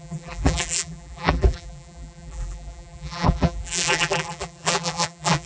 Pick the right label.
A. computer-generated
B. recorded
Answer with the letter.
A